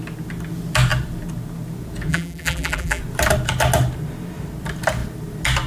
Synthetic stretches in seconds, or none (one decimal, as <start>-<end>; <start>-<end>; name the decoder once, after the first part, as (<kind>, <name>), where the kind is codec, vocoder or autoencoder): 2.1-3.0 (vocoder, BigVGAN v2)